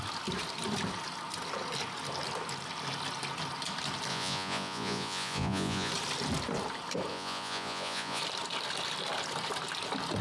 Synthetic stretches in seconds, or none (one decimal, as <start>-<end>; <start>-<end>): 4.1-5.9; 7.1-8.2

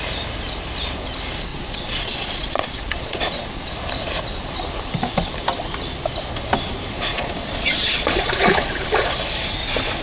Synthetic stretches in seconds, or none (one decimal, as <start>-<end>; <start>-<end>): 1.5-3.7; 7.1-9.2